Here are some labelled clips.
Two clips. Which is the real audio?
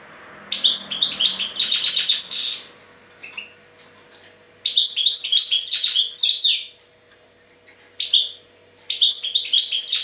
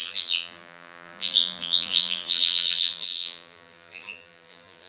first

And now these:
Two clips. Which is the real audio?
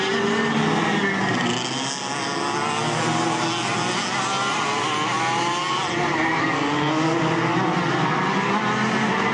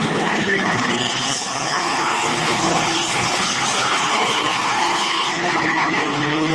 first